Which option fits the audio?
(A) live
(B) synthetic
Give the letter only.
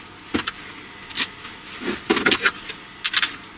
A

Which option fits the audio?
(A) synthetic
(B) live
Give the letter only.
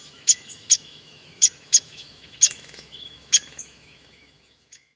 A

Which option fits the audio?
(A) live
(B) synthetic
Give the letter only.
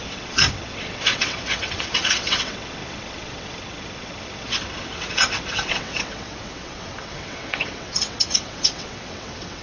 B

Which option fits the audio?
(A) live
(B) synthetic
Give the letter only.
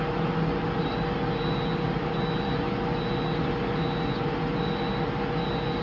A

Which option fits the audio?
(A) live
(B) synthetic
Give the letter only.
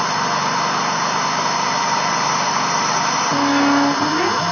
A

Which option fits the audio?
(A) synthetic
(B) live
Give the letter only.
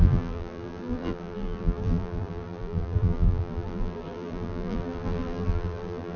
A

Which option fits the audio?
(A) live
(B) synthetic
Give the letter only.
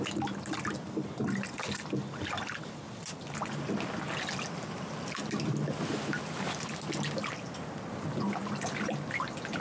A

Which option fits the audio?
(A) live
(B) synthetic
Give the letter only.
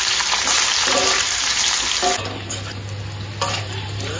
A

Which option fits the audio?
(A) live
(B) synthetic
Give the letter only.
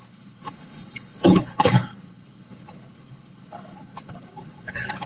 B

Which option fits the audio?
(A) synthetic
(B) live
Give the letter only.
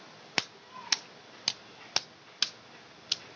B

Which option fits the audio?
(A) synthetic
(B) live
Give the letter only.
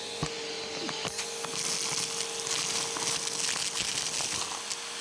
B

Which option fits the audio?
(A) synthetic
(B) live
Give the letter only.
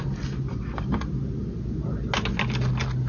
B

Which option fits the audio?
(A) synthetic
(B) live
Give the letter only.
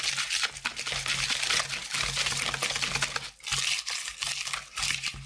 B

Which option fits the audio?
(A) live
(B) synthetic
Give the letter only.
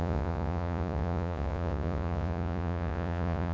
B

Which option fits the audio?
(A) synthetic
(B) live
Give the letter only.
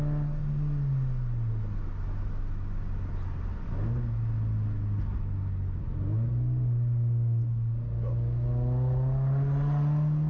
B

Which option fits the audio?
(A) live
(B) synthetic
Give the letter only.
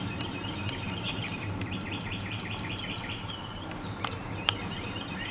B